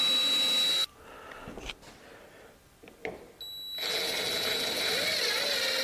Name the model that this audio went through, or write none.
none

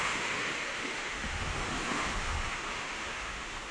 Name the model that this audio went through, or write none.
autoencoder, DAC-VAE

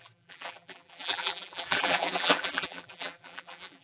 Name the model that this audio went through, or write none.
vocoder, BigVGAN v2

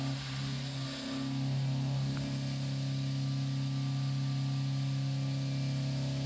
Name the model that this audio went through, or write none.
none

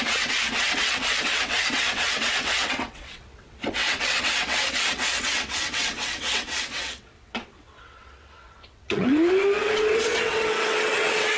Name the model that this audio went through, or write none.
vocoder, WaveNeXt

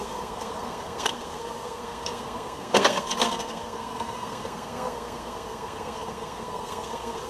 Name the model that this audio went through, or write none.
codec, SNAC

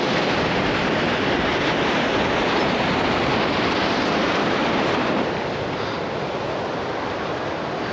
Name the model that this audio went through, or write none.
none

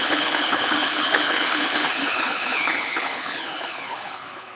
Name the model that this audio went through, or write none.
codec, HILCodec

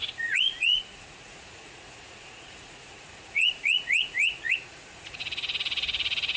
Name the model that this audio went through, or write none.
vocoder, Vocos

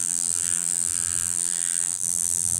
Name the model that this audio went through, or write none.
vocoder, BigVGAN v2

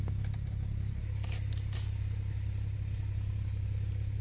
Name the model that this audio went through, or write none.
none